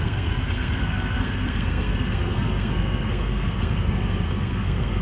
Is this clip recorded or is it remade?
remade